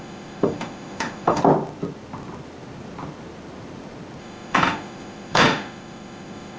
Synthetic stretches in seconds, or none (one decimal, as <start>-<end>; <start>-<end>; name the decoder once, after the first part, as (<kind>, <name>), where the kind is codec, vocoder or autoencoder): 0.0-1.4 (autoencoder, DAC-VAE); 4.2-6.6